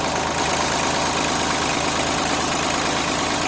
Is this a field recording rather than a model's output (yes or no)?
yes